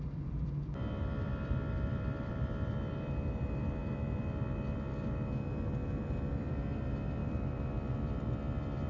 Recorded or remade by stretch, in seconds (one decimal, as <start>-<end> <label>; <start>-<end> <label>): 0.0-3.8 remade; 3.8-6.3 recorded; 6.3-7.2 remade; 7.2-8.9 recorded